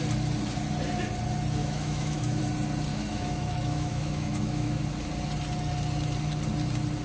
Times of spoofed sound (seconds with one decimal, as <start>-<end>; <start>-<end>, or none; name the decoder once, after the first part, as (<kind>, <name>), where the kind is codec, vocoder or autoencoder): 1.6-2.4 (autoencoder, DAC-VAE); 2.9-4.8